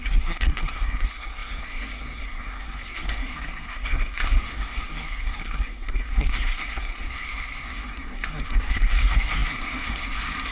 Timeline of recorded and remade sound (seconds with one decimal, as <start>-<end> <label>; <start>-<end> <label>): 0.0-10.5 remade